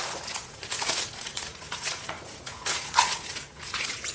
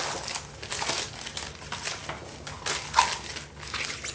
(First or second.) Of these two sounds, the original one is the second